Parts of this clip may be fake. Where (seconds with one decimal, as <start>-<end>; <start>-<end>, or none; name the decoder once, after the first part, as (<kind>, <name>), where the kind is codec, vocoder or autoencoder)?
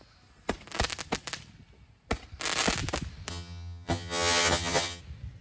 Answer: 3.3-5.0 (vocoder, HiFi-GAN)